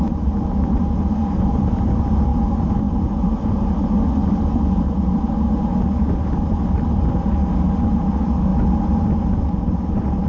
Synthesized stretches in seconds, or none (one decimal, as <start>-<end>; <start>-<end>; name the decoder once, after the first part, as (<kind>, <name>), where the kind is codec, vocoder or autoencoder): none